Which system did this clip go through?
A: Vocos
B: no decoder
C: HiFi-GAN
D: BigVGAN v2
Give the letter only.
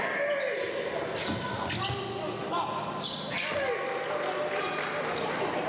B